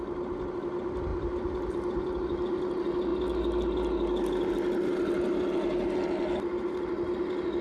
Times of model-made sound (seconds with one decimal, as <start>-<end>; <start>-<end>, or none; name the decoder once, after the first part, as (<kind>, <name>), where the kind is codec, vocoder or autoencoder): none

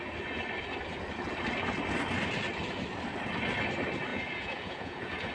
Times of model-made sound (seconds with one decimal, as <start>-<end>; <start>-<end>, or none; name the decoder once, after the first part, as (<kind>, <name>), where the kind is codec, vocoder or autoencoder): 4.1-5.3 (vocoder, Vocos)

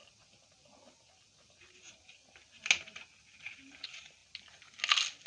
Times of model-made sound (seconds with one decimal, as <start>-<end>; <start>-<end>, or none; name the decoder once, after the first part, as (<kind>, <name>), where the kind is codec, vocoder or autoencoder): none